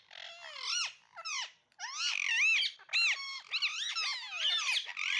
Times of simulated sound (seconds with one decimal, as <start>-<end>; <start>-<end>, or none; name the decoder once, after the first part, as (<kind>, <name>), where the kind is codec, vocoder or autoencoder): none